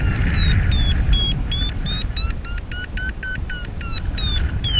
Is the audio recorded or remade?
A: recorded